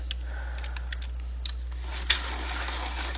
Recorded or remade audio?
recorded